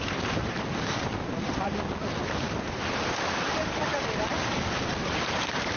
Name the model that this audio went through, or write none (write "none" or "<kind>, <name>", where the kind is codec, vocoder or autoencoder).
vocoder, BigVGAN v2